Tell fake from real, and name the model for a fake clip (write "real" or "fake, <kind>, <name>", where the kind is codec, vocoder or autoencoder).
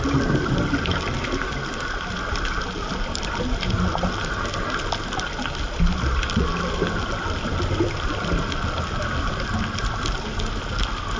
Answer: real